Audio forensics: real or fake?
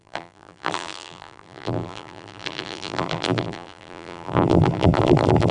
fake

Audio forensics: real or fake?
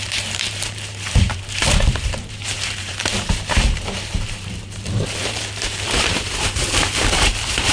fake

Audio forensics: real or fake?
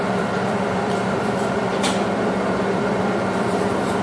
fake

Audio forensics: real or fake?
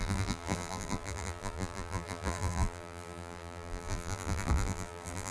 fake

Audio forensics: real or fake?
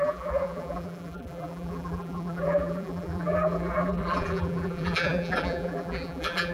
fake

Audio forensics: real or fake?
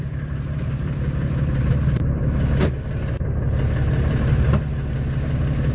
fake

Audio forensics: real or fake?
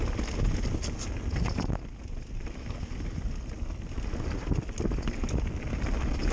real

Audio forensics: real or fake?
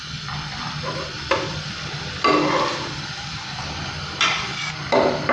real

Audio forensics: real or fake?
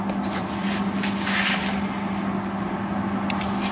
real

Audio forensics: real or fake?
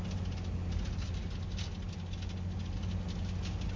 real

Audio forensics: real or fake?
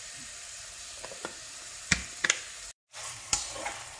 fake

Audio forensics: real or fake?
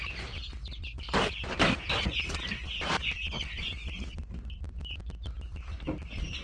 fake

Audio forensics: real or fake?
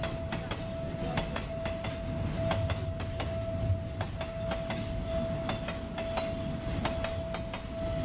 real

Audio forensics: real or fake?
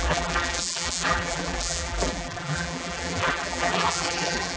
fake